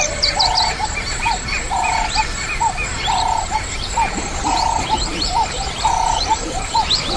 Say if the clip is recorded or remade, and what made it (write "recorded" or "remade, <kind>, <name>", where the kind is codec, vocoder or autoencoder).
recorded